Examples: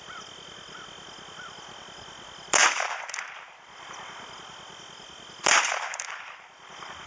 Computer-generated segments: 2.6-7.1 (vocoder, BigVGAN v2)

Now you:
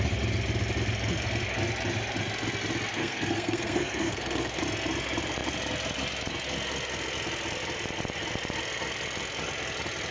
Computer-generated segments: 2.9-4.6 (codec, SNAC)

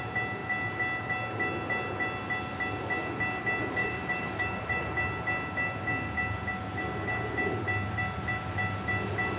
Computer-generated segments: 3.8-4.9 (vocoder, BigVGAN v2)

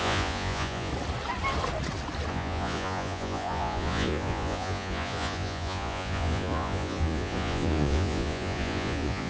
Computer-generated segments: 0.0-0.9 (vocoder, Vocos); 2.3-9.3

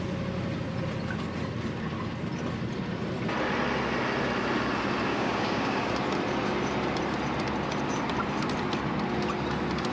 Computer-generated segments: 5.1-5.9 (codec, DAC)

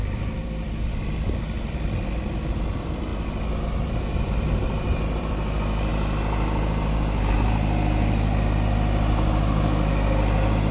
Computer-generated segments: 0.0-3.1 (vocoder, BigVGAN v2); 3.6-5.9

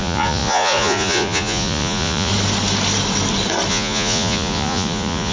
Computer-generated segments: 0.0-2.3 (vocoder, Vocos); 3.7-5.3